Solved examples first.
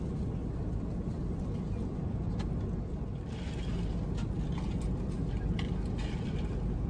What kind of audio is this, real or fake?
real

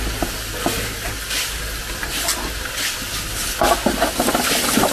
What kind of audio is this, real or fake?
real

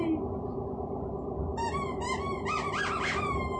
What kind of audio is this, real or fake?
fake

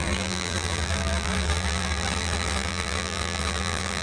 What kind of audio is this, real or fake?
fake